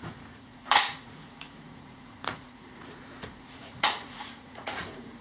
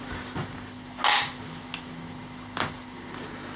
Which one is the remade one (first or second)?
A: first